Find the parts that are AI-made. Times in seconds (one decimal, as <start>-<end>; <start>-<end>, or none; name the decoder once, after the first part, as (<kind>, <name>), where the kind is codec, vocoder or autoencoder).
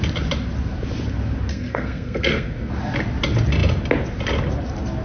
1.5-2.7 (codec, SNAC)